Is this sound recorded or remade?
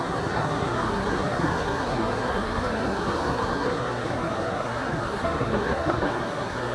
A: remade